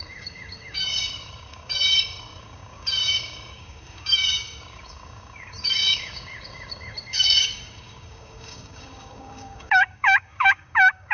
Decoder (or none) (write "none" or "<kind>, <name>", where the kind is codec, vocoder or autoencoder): codec, DAC